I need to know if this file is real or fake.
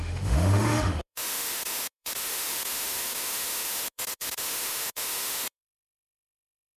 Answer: fake